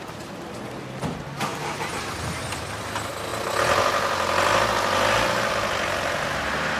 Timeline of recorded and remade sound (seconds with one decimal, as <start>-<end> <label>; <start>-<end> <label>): 0.0-6.8 recorded